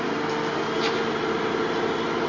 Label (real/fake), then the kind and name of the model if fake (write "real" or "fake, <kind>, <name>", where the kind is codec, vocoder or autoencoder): real